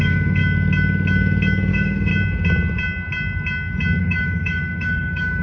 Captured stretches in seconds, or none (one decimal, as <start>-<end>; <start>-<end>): 0.4-1.7; 2.1-4.0